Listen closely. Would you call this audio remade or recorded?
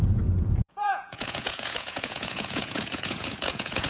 remade